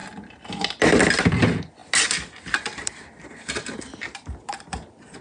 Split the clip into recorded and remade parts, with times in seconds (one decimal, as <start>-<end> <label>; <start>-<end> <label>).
0.0-5.2 recorded